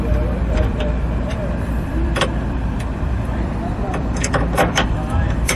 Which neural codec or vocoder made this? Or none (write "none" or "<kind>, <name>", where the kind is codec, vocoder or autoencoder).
vocoder, BigVGAN v2